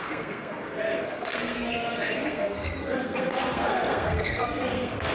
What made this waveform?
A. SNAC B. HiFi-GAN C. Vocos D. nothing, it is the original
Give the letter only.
A